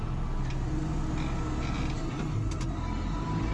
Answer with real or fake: real